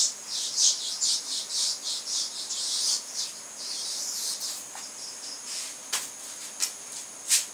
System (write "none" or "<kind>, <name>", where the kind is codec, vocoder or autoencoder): none